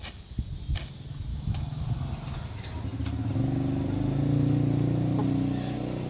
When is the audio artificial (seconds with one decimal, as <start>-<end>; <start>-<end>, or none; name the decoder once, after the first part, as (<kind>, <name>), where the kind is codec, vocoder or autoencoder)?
1.3-1.8 (autoencoder, DAC-VAE)